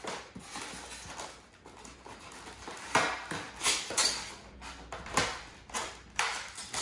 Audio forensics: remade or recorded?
recorded